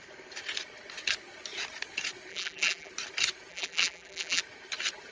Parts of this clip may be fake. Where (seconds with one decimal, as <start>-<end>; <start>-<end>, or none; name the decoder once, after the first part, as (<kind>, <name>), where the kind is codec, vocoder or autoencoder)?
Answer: 2.3-2.9 (vocoder, BigVGAN v2); 3.5-4.4